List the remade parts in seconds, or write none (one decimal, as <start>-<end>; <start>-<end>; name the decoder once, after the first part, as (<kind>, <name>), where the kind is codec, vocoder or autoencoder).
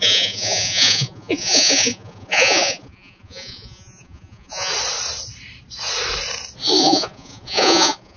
0.0-4.7 (vocoder, Vocos); 6.8-8.2